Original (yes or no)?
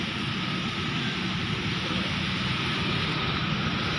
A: yes